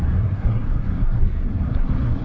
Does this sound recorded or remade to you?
remade